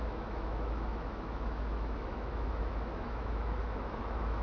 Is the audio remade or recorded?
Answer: remade